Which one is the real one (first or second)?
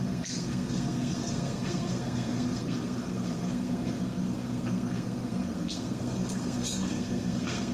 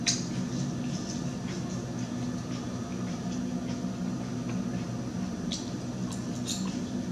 second